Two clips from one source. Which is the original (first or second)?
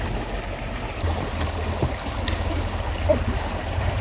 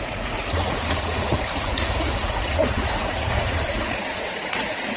first